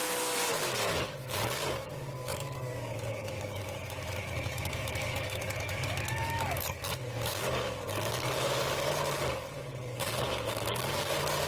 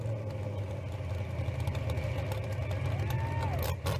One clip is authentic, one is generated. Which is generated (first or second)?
first